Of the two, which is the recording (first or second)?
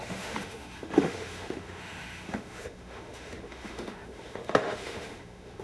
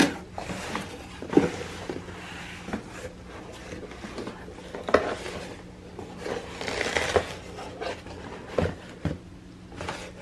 second